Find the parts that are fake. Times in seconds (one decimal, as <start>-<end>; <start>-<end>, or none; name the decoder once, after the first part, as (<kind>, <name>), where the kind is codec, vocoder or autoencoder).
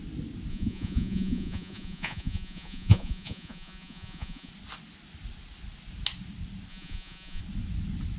0.5-4.5 (vocoder, Vocos); 6.7-7.4